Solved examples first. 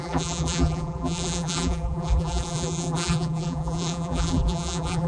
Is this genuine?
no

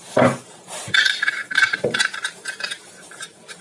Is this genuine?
no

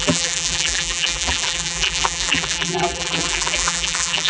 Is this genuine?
no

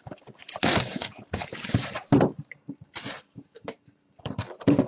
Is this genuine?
no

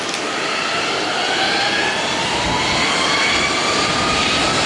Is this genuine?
yes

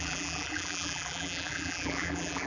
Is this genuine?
no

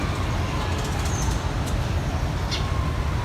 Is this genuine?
yes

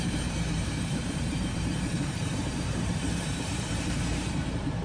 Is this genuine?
no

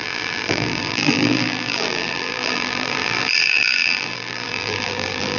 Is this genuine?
no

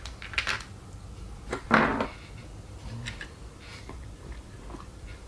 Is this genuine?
yes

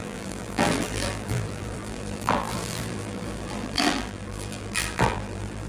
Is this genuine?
no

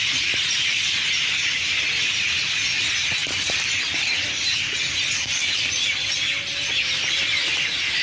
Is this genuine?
yes